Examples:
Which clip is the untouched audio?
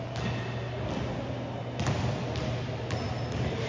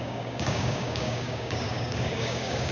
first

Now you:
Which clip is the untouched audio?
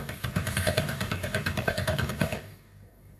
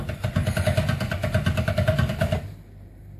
second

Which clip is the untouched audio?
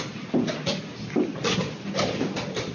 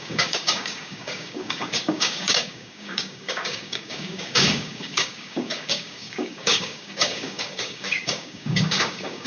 first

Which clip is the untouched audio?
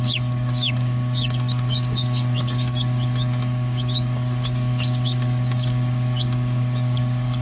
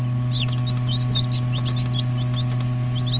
second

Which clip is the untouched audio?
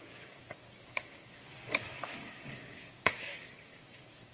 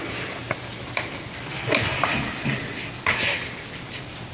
second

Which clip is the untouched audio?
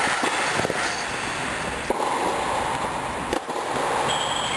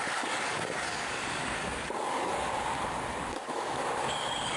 first